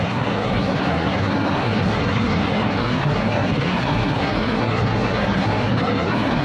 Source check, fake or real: fake